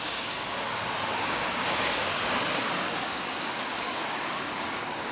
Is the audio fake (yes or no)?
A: yes